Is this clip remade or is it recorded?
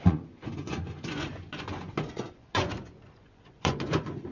remade